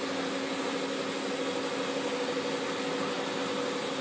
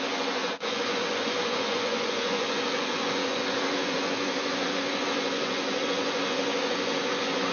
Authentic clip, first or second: first